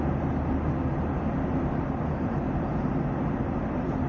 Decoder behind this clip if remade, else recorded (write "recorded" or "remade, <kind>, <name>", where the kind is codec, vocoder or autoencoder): recorded